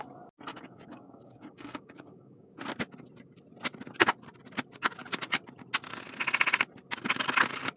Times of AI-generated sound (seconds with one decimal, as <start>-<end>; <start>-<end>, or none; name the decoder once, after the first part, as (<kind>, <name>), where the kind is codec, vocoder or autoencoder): 0.5-2.5 (codec, DAC)

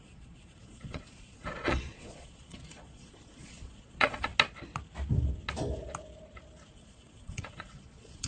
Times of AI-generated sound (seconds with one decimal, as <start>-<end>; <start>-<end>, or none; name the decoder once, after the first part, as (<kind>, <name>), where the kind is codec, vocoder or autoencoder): 0.0-4.3 (vocoder, Vocos); 6.7-8.3

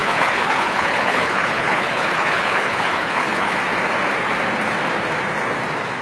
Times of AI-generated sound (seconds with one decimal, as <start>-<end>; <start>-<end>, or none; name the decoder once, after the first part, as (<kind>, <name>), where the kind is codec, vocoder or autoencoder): 0.0-3.6 (codec, HILCodec)